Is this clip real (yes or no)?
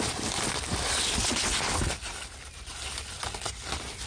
yes